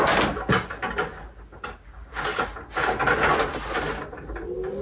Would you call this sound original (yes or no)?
yes